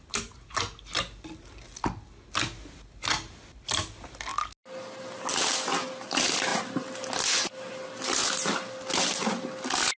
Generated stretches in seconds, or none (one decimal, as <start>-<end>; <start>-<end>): none